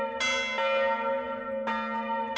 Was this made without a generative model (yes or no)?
yes